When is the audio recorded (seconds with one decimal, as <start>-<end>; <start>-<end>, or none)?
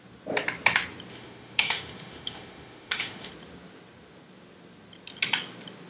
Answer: 0.0-1.1; 3.3-5.9